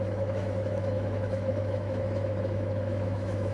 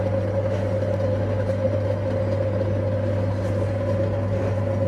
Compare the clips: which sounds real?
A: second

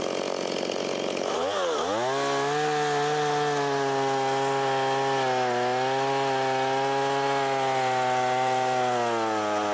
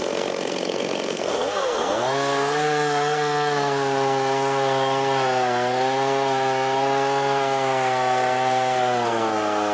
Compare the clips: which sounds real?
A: first